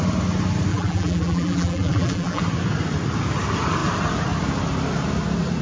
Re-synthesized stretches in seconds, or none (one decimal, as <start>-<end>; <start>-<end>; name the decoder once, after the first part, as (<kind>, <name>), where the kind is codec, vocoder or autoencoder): 0.7-2.4 (vocoder, BigVGAN v2)